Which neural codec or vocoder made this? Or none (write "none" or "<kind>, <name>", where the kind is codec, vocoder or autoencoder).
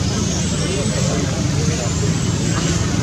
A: none